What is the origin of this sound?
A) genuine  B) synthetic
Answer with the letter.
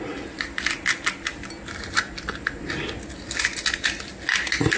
A